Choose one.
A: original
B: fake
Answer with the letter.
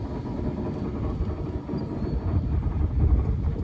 B